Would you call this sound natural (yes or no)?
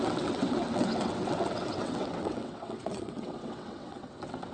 no